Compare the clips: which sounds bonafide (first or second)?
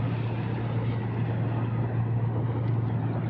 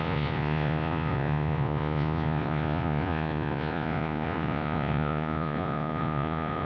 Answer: first